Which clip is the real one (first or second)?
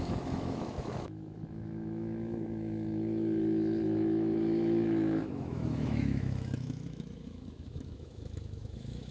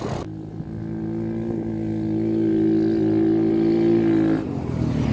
second